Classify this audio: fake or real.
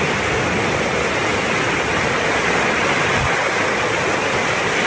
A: real